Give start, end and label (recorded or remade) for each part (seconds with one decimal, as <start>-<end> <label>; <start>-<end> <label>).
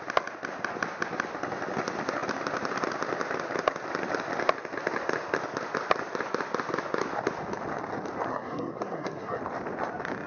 0.0-8.3 recorded; 8.3-9.4 remade; 9.4-10.3 recorded